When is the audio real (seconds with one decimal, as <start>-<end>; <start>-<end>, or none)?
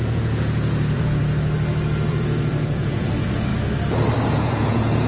1.2-2.1; 3.5-4.3